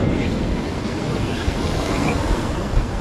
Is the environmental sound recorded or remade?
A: remade